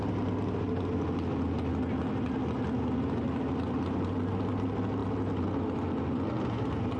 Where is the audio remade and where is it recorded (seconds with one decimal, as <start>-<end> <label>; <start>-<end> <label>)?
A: 0.0-7.0 recorded